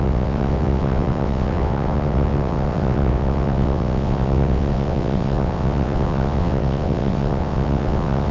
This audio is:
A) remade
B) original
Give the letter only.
A